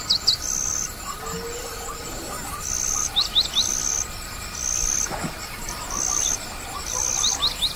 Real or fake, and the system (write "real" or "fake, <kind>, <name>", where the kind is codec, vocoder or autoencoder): real